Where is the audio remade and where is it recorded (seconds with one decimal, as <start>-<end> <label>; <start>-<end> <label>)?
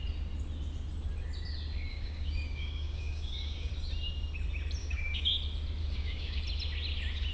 0.0-1.9 recorded; 1.9-3.7 remade; 3.7-4.8 recorded; 4.8-5.3 remade; 5.3-5.8 recorded; 5.8-6.4 remade; 6.4-7.3 recorded